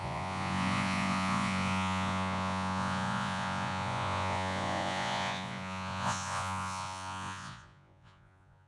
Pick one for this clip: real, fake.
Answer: fake